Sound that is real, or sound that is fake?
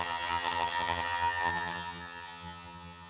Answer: fake